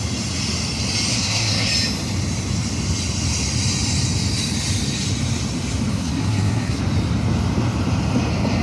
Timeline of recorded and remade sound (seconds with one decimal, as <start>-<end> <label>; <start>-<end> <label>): 0.0-1.1 recorded; 1.1-1.7 remade; 1.7-5.9 recorded; 5.9-6.8 remade; 6.8-8.6 recorded